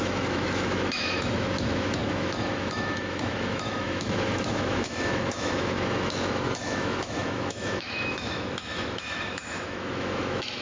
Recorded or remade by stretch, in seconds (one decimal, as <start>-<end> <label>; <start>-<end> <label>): 0.0-10.6 remade